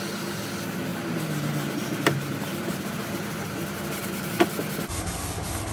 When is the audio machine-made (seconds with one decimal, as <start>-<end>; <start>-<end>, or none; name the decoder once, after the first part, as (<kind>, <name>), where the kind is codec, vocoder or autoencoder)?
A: 0.9-4.3 (vocoder, BigVGAN v2)